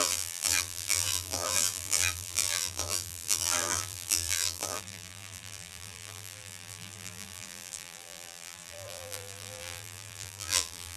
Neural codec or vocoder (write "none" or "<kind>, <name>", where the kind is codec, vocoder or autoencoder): vocoder, BigVGAN v2